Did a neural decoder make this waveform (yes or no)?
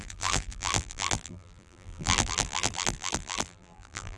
yes